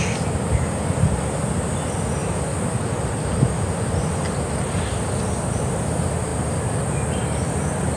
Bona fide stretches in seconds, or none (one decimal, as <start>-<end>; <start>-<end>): 0.0-8.0